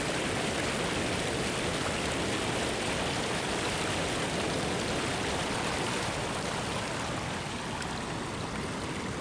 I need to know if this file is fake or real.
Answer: real